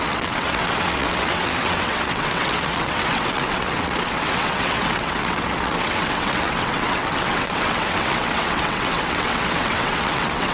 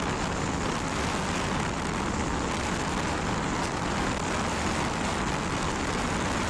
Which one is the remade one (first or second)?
first